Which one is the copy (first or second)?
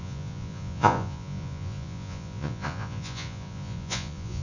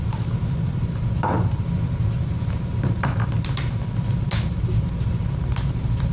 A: first